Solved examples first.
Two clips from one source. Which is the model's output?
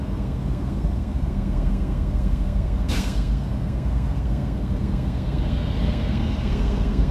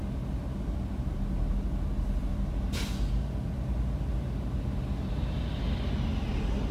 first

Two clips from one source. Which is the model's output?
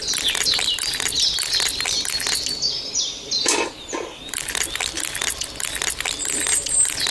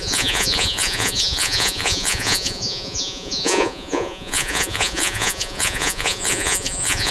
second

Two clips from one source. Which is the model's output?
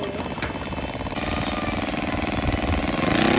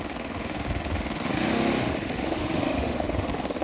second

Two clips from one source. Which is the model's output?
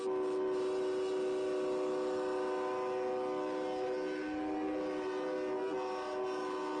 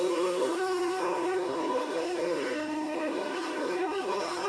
second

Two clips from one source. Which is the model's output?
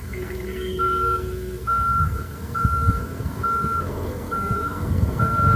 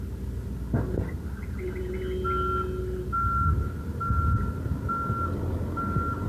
first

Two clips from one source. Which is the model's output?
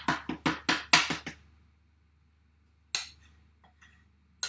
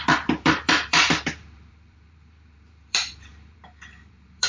second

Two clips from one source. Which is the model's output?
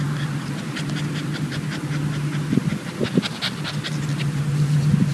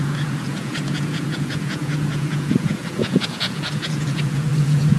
second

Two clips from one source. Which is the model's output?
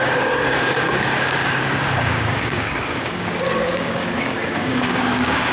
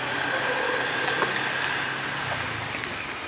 first